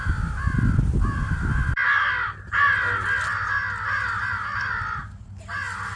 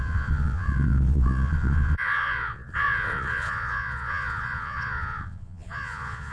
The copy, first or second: second